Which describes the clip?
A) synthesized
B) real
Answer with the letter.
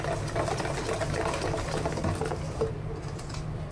B